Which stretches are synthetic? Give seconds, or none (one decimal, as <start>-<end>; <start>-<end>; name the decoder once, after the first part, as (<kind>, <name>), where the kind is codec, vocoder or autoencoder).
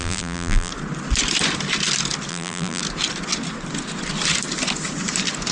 0.0-0.7 (vocoder, BigVGAN v2); 2.3-2.8